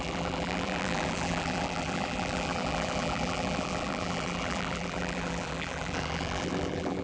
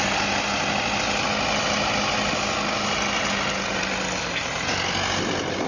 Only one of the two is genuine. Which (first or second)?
second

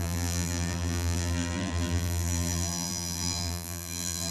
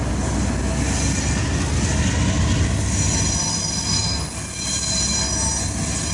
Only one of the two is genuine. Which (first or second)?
second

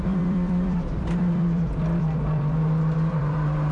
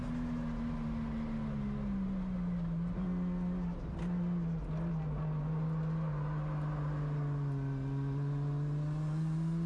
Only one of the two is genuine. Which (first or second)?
second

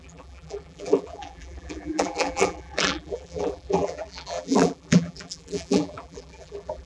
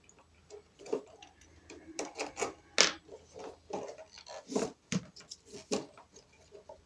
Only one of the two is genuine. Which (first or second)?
second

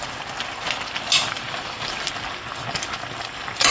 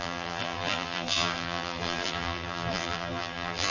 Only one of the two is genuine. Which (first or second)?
first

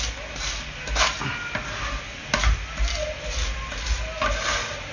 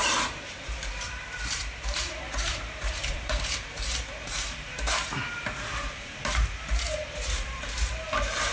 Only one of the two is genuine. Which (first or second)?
first